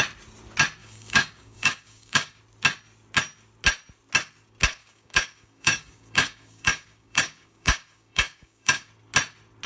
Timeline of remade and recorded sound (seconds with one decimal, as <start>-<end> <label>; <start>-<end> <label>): 0.0-0.8 recorded; 0.8-2.4 remade; 2.4-4.8 recorded; 4.8-8.9 remade; 8.9-9.7 recorded